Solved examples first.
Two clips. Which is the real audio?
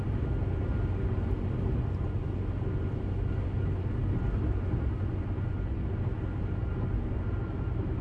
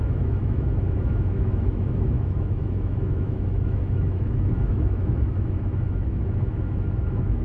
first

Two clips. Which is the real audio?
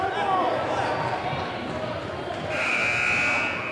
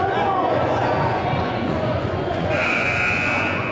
first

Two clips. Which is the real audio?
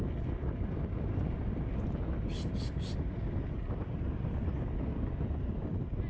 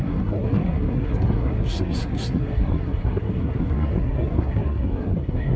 first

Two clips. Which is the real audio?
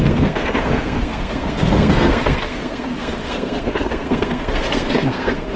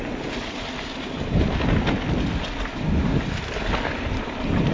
second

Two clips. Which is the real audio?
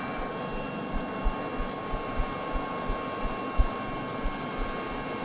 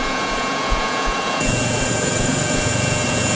first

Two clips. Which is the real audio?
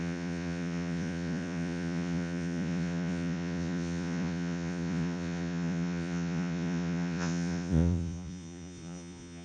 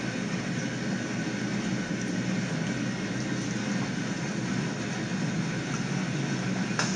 second